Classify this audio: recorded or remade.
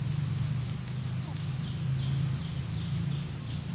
recorded